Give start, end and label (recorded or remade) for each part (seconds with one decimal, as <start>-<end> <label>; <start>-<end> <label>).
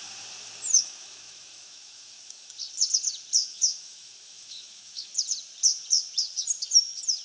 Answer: 0.0-0.7 recorded; 0.7-2.5 remade; 2.5-3.5 recorded; 3.5-5.1 remade; 5.1-7.2 recorded